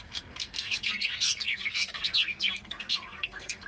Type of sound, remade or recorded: remade